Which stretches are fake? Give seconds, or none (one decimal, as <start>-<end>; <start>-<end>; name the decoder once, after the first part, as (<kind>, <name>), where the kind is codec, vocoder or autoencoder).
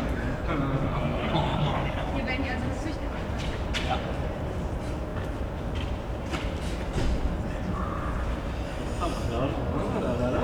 1.5-2.1 (codec, DAC)